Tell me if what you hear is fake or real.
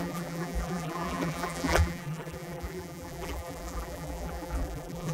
fake